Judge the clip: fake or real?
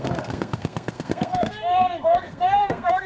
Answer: fake